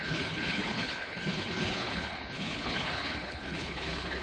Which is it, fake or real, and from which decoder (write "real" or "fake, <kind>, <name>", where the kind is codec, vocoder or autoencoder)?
fake, codec, HILCodec